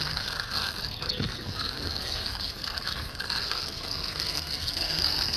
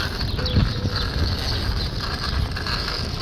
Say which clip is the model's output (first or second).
first